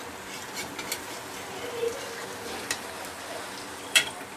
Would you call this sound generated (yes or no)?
no